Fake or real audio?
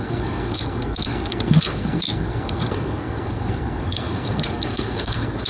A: fake